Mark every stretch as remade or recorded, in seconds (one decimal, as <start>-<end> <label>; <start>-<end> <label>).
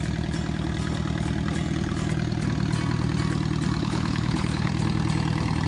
0.0-3.8 recorded; 3.8-4.7 remade; 4.7-5.7 recorded